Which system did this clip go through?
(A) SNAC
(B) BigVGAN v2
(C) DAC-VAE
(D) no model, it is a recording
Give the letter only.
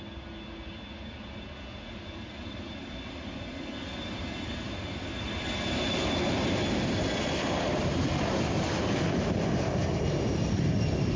D